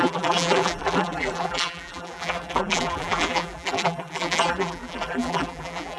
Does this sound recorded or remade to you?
remade